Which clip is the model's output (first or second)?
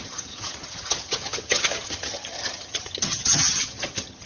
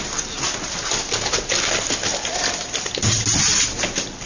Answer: first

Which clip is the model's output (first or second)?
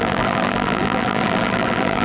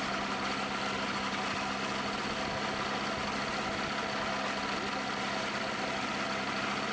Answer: first